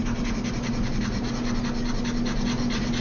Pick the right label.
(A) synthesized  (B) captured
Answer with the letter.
B